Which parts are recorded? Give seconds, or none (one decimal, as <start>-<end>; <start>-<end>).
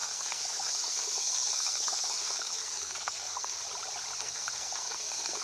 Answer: 3.6-4.2